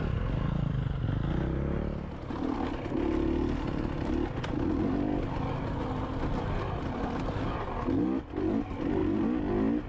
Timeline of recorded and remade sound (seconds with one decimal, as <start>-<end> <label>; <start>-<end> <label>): 0.0-9.9 recorded